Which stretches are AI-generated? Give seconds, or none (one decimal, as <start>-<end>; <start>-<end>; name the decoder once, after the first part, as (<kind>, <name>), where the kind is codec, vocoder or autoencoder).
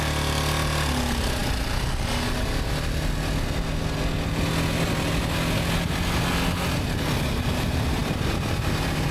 none